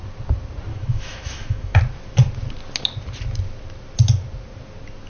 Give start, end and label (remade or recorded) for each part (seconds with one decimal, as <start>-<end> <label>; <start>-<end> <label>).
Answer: 0.0-0.7 recorded; 0.7-1.8 remade; 1.8-5.1 recorded